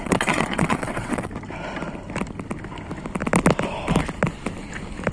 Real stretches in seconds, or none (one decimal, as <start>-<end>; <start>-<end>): 1.3-5.1